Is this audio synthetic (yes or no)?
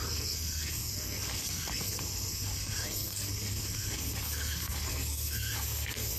yes